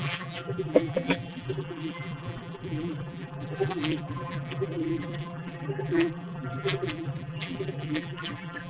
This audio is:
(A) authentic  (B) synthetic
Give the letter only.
B